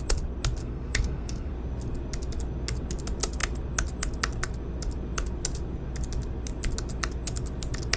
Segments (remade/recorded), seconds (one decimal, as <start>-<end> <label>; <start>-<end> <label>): 0.0-0.6 recorded; 0.6-1.5 remade; 1.5-8.0 recorded